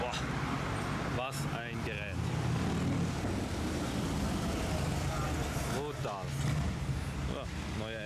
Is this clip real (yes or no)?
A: yes